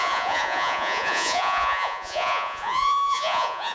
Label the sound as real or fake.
fake